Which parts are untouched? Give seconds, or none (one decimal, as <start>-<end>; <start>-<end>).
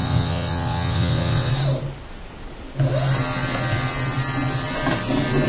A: 1.5-5.5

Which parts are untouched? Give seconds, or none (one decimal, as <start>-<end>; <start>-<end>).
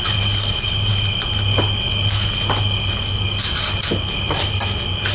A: 0.0-5.1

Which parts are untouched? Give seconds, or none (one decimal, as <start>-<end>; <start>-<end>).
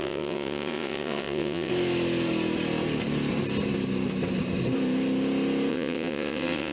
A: 1.7-5.7